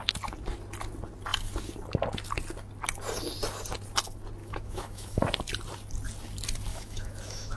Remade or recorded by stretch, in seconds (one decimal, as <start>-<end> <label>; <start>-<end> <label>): 0.0-4.4 recorded; 4.4-5.2 remade; 5.2-6.7 recorded; 6.7-7.6 remade